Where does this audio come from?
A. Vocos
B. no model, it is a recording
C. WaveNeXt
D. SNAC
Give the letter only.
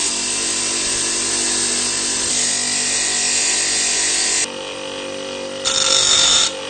B